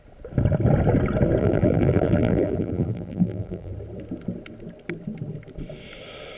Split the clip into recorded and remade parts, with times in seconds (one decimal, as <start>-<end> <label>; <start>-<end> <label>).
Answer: 0.0-1.4 recorded; 1.4-3.7 remade; 3.7-6.4 recorded

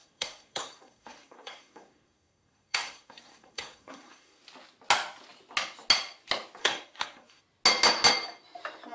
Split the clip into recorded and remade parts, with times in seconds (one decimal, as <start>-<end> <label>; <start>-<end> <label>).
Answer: 0.0-4.4 remade; 4.4-6.6 recorded; 6.6-7.4 remade; 7.4-8.9 recorded

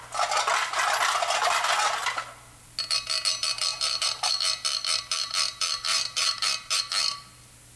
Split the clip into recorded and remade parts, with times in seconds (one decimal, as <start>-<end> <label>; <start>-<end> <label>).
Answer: 0.0-3.7 recorded; 3.7-4.3 remade; 4.3-5.9 recorded; 5.9-6.8 remade; 6.8-7.8 recorded

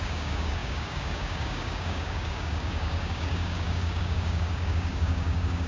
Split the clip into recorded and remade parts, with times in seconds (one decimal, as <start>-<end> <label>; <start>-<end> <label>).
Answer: 0.0-5.7 remade

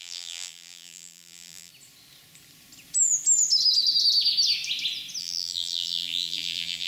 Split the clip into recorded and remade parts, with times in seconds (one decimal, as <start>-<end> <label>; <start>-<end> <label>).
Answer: 0.0-1.7 remade; 1.7-5.2 recorded; 5.2-6.9 remade